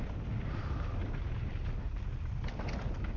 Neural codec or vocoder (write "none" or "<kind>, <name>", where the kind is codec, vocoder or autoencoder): none